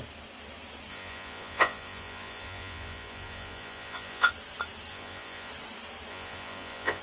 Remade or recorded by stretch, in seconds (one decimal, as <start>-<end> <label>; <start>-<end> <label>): 0.0-0.9 recorded; 0.9-4.3 remade; 4.3-4.9 recorded; 4.9-5.5 remade; 5.5-6.1 recorded; 6.1-7.0 remade